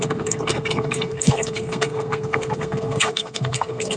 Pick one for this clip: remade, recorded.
remade